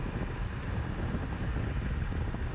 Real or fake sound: real